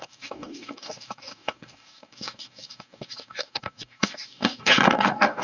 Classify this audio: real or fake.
fake